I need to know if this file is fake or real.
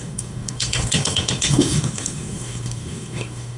fake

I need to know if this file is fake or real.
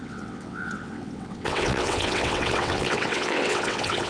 fake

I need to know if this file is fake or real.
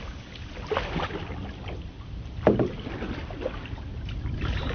real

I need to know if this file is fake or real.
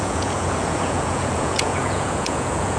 fake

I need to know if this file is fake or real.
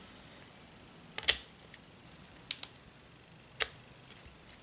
real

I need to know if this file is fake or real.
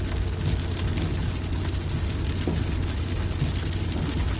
real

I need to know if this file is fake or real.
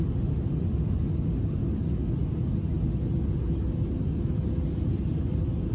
real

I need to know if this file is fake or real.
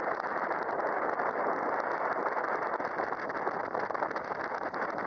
real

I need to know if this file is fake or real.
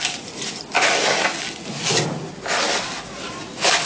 real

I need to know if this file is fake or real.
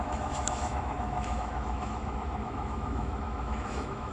fake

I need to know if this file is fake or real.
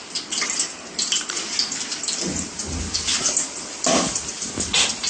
real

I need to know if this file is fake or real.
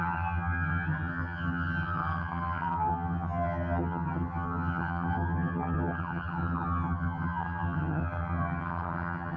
fake